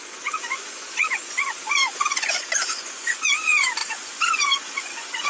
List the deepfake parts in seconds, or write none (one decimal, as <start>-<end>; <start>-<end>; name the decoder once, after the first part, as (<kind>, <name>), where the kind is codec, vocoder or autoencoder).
0.0-5.3 (vocoder, Vocos)